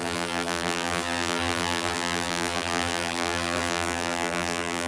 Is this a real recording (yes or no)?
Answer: no